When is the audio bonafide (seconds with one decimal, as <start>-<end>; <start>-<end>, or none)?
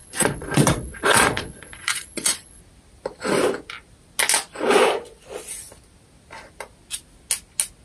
2.6-7.8